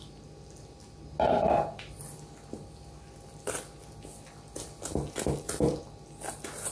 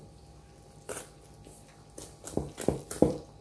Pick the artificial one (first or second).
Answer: second